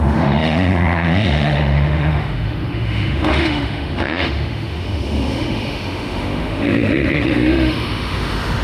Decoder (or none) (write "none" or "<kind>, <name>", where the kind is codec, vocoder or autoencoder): autoencoder, DAC-VAE